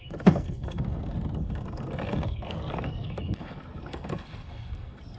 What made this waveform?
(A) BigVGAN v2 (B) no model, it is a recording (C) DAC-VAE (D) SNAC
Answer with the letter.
D